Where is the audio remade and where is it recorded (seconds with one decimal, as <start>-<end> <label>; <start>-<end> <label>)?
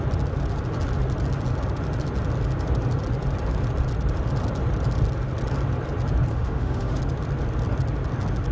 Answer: 0.0-6.3 recorded; 6.3-7.0 remade; 7.0-8.5 recorded